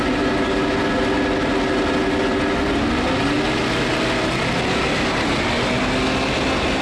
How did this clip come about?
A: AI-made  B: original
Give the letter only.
B